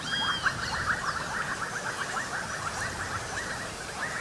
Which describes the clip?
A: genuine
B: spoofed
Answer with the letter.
A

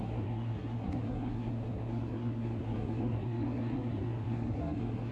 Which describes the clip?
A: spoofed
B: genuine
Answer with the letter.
A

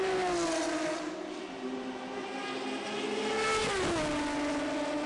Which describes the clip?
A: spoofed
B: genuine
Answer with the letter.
B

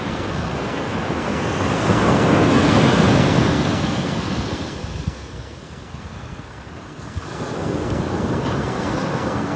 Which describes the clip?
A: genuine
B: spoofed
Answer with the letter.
B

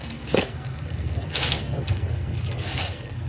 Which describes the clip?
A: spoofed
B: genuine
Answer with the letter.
A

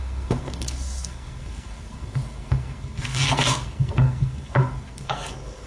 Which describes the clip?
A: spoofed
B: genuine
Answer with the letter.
A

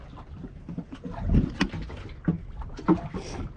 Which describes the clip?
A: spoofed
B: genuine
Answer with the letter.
B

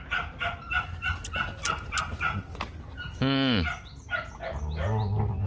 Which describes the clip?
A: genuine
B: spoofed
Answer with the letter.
A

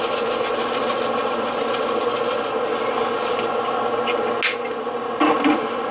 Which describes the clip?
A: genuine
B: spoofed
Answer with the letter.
A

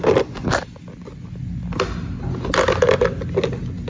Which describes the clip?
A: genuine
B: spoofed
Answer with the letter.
A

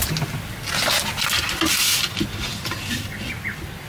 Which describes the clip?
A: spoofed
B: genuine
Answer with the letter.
B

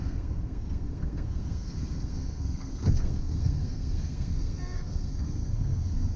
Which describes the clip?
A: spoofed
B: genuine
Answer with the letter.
A